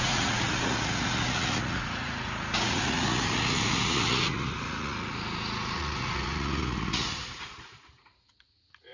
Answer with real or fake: fake